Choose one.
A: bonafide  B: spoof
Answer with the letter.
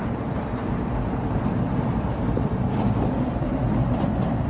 A